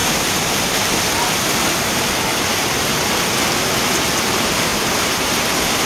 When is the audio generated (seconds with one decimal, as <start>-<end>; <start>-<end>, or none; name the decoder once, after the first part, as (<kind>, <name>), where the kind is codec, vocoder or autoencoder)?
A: 0.0-3.0 (vocoder, BigVGAN v2); 4.7-5.3